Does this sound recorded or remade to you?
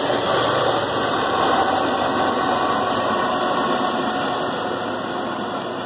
recorded